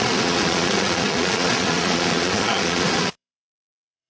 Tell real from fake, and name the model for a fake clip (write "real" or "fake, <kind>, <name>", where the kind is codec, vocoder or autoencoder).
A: fake, vocoder, Vocos